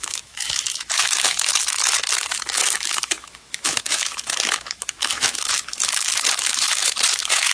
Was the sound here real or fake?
fake